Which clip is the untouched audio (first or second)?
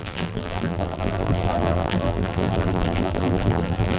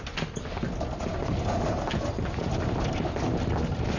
second